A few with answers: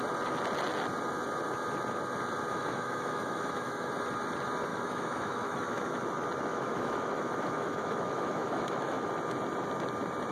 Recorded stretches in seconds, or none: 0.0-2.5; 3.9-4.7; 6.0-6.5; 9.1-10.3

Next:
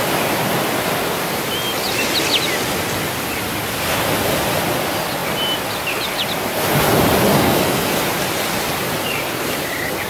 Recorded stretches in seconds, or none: 0.0-7.3; 7.9-10.1

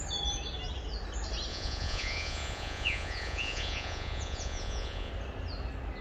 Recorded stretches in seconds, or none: 0.0-1.5; 5.1-6.0